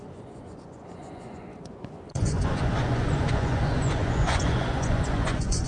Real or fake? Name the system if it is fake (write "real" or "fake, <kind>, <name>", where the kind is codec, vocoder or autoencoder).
fake, vocoder, Vocos